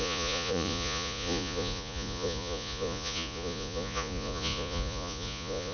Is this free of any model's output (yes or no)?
no